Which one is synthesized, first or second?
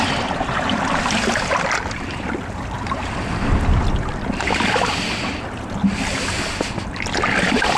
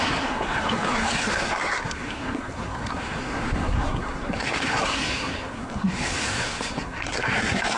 second